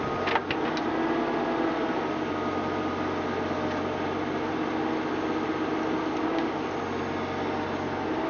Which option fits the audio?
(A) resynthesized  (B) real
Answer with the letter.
B